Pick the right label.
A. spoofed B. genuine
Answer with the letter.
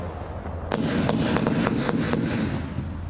B